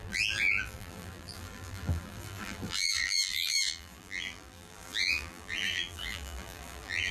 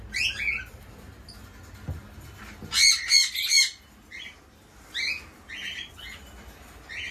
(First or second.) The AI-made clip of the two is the first